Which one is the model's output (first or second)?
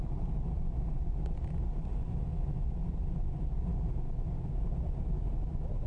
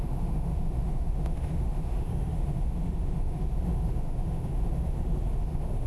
second